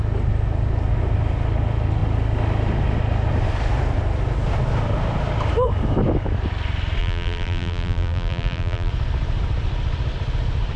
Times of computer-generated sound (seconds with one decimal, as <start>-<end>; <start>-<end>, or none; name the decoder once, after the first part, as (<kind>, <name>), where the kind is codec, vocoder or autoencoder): 7.0-8.9 (vocoder, BigVGAN v2)